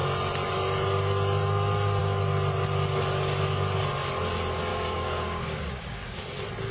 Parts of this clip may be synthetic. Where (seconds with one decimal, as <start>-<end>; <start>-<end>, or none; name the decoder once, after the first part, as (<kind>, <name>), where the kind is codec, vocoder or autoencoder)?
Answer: 4.7-6.2 (codec, DAC)